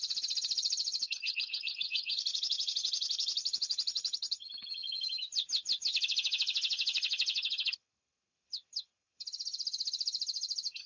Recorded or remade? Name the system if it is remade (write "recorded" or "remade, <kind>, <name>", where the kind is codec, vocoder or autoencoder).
remade, vocoder, HiFi-GAN